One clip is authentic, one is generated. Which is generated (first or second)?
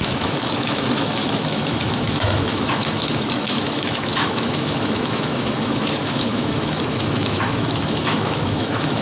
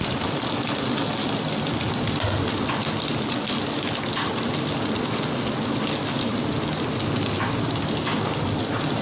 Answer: first